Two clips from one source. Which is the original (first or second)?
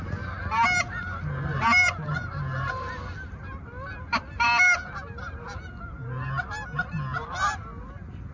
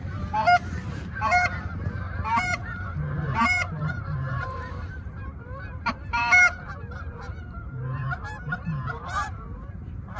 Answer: first